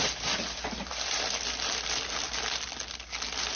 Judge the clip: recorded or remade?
recorded